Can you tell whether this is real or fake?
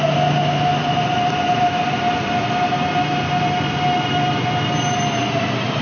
real